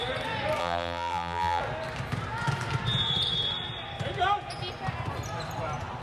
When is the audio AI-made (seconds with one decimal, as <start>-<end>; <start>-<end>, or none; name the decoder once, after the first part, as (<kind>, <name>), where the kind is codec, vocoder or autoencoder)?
0.6-1.6 (vocoder, BigVGAN v2)